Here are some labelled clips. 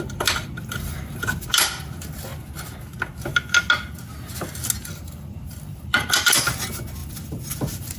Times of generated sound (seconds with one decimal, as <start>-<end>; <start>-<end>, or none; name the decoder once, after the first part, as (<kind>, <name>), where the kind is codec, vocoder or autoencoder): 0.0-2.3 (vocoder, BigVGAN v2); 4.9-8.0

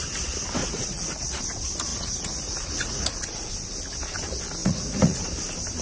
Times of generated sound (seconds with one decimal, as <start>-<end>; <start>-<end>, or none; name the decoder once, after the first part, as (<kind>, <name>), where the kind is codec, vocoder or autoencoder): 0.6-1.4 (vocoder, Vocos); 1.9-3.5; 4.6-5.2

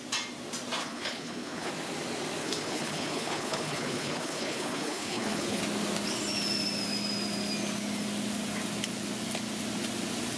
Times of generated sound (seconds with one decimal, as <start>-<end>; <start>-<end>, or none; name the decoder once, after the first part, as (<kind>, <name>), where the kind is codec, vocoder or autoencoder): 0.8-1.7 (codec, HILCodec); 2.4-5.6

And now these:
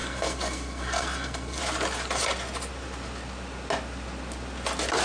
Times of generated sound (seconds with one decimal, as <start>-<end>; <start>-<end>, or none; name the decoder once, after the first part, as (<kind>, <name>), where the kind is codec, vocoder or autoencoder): 0.0-1.6 (codec, SNAC)

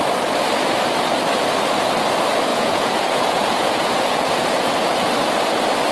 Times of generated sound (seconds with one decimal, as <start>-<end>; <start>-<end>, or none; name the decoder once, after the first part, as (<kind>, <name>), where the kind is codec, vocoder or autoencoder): 2.5-5.1 (vocoder, Vocos)